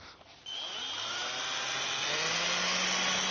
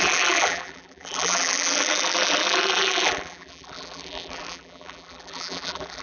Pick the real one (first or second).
first